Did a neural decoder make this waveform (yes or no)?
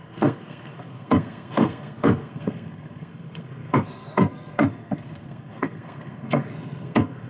yes